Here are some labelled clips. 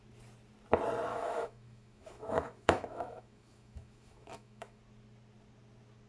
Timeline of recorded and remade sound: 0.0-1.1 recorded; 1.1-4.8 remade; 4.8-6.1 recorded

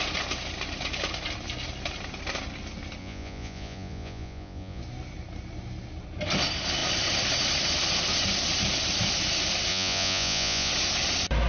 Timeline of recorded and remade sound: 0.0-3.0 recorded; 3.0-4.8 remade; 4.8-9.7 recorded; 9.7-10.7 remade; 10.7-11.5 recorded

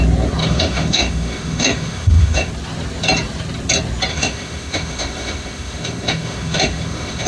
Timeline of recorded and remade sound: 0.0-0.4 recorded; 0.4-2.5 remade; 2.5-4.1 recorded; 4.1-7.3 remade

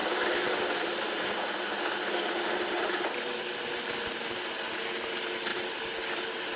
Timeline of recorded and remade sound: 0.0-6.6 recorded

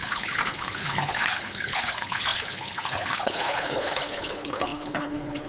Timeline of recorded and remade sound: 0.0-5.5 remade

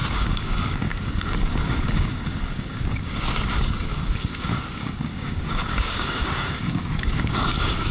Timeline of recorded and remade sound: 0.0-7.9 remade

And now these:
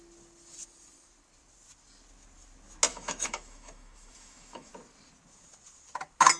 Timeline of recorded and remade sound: 0.0-2.9 recorded; 2.9-4.7 remade; 4.7-6.4 recorded

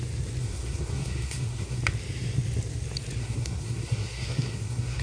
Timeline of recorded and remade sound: 0.0-0.4 recorded; 0.4-1.8 remade; 1.8-3.2 recorded; 3.2-5.0 remade